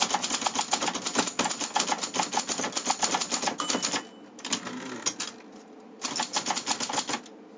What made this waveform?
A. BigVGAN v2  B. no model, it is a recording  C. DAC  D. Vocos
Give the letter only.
B